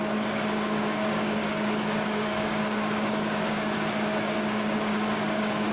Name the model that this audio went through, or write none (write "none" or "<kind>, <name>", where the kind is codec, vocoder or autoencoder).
codec, DAC